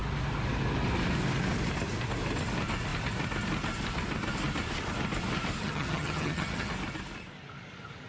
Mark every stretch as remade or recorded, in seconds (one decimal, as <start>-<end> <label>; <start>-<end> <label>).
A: 0.0-5.6 recorded; 5.6-6.7 remade; 6.7-8.1 recorded